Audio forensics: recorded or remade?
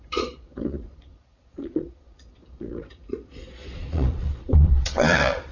remade